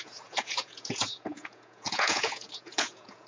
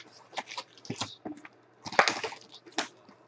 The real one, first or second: second